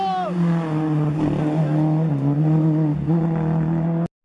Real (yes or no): yes